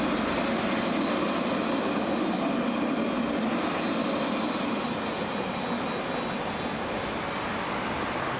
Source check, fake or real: real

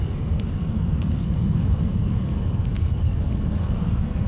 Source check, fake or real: fake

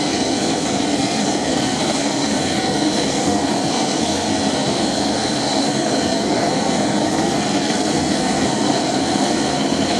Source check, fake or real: fake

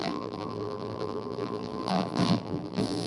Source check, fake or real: fake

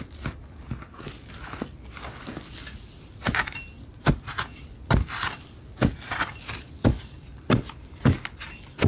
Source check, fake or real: real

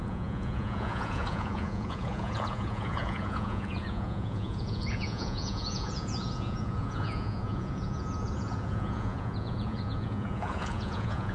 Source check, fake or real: fake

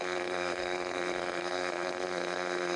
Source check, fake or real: fake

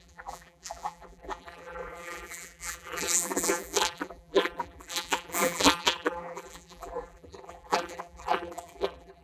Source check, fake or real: fake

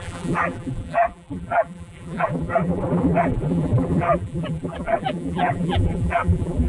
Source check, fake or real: fake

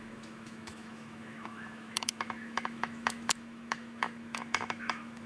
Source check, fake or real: fake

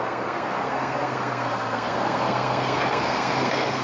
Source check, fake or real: fake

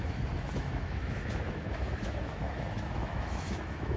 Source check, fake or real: fake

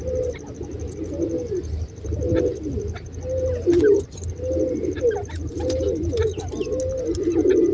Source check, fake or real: real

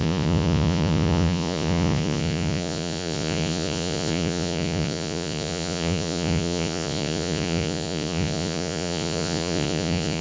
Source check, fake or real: fake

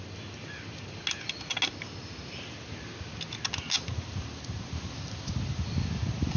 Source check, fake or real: real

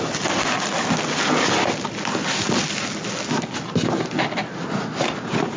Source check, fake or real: real